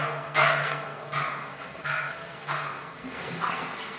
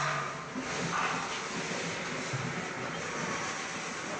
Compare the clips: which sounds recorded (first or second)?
second